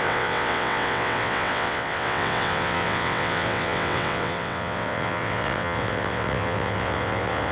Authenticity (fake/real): fake